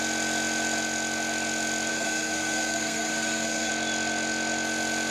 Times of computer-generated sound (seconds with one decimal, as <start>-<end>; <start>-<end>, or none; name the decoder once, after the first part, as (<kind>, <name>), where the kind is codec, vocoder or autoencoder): 1.9-3.7 (codec, SNAC)